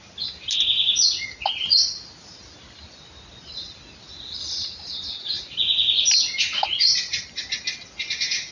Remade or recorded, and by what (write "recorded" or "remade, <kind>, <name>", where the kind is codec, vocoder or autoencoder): recorded